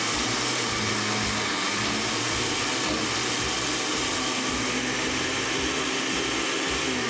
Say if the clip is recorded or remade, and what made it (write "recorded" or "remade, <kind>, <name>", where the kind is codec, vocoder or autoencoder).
recorded